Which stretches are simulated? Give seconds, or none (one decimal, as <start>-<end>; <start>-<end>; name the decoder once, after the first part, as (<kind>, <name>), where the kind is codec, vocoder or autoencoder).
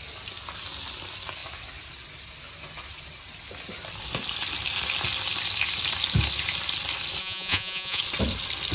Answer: 7.2-8.0 (vocoder, Vocos)